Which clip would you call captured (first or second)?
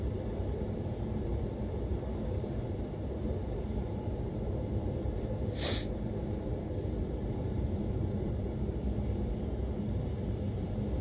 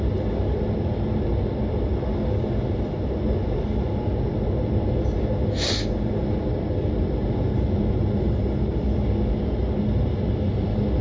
second